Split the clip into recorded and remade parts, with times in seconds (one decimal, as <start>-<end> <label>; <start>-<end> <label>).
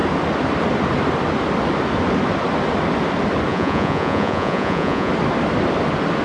0.0-3.5 recorded; 3.5-5.1 remade; 5.1-6.2 recorded